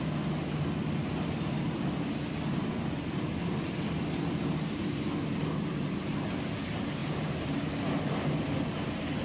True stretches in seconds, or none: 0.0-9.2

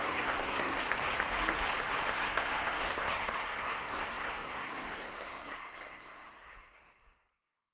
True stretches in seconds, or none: 0.7-2.1

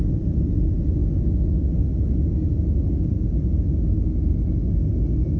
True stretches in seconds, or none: 1.0-1.5; 1.9-5.4